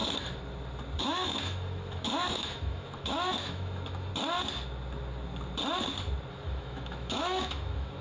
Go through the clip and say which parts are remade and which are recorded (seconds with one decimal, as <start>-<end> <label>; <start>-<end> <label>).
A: 0.0-1.0 recorded; 1.0-4.1 remade; 4.1-6.3 recorded; 6.3-8.0 remade